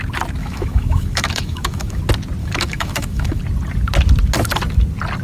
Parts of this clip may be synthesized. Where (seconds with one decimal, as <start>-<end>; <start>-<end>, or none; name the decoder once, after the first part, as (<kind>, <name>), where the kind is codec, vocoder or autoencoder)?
0.4-2.0 (autoencoder, DAC-VAE); 2.4-3.4